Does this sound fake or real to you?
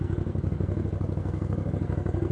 fake